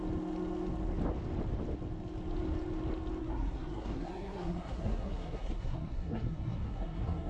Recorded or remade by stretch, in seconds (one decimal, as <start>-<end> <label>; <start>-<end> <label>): 0.0-3.2 recorded; 3.2-7.3 remade